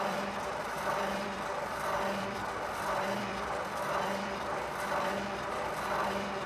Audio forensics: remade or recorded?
remade